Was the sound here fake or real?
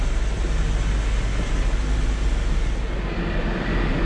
real